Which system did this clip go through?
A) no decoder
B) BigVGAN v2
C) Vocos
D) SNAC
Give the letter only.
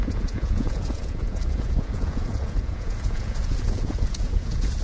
C